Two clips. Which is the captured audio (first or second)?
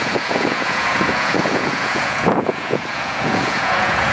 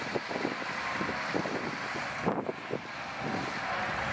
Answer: second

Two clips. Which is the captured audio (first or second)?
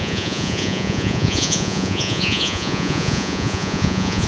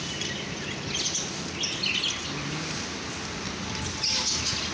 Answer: second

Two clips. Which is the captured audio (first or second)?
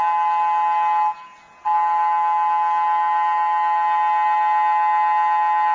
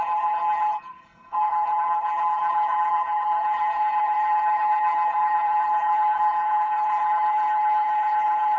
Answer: first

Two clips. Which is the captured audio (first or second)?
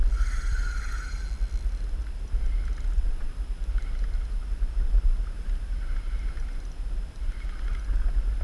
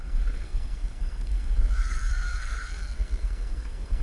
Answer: first